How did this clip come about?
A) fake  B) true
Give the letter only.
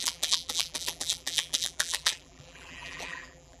A